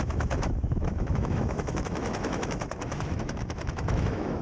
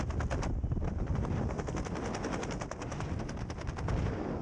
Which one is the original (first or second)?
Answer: second